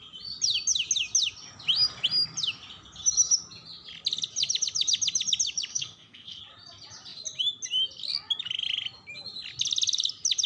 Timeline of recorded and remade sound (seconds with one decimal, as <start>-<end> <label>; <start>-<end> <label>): 0.0-5.7 recorded; 5.7-6.4 remade; 6.4-10.5 recorded